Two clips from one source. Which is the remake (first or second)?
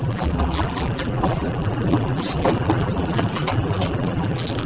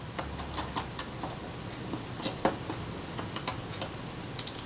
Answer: first